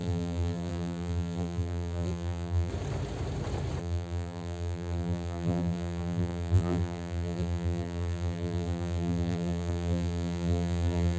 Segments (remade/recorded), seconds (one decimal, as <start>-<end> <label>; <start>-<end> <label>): 0.0-2.7 remade; 2.7-3.8 recorded; 3.8-11.2 remade